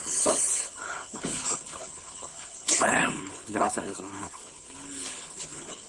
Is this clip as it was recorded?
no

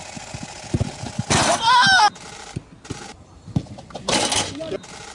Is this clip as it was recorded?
yes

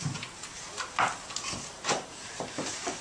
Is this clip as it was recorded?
yes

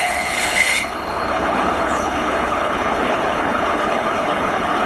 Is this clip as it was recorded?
no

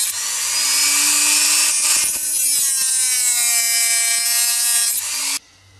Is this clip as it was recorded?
yes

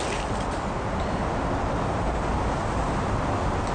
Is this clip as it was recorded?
yes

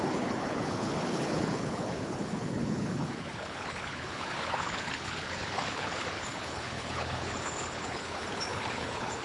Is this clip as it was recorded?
no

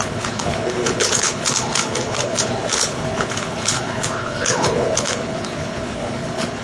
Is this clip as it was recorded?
no